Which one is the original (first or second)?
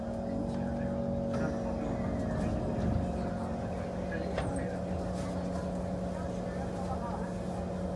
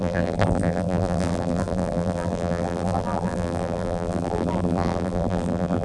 first